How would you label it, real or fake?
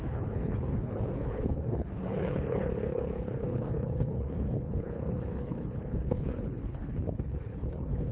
fake